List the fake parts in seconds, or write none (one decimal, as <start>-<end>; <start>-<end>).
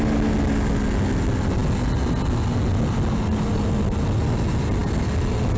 none